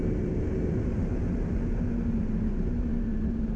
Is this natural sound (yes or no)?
no